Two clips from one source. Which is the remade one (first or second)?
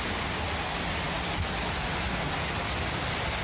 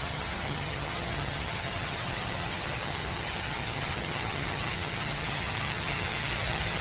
second